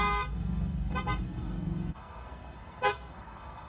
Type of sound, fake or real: fake